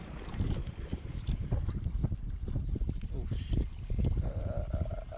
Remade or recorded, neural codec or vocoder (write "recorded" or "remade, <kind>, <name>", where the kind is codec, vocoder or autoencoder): recorded